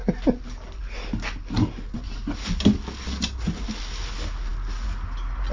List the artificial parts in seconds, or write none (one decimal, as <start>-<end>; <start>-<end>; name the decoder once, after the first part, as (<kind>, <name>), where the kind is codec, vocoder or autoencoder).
none